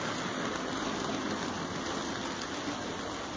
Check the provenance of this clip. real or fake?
real